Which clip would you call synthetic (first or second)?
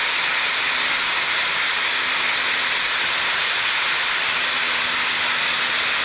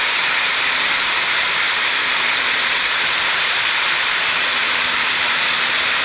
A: second